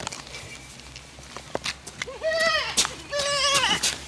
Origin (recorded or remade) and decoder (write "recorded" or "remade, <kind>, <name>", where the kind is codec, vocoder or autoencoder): recorded